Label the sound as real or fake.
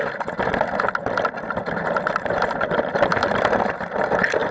real